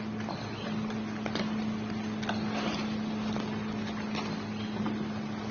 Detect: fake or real real